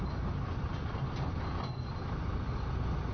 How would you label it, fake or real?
real